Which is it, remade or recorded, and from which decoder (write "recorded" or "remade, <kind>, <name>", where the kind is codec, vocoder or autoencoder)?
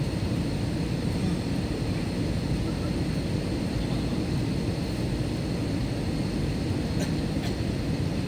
recorded